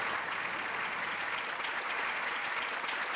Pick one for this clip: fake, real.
real